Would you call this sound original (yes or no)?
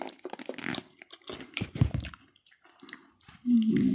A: yes